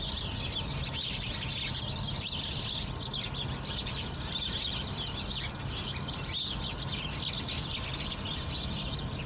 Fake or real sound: real